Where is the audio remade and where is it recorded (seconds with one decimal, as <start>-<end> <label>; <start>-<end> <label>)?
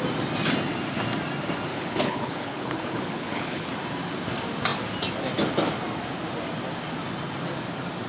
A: 0.0-1.7 recorded; 1.7-3.7 remade; 3.7-8.1 recorded